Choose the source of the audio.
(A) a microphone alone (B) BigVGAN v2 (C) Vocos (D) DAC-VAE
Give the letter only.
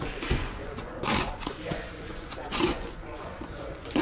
C